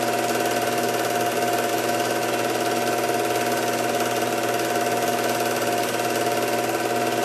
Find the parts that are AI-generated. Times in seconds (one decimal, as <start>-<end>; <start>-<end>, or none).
1.7-2.2